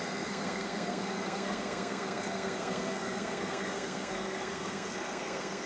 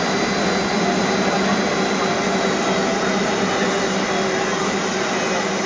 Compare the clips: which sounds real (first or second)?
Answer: second